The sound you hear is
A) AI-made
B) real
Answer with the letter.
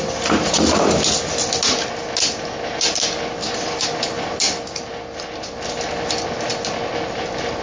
B